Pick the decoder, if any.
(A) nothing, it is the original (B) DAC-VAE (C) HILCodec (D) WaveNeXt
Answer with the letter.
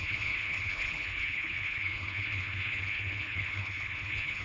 C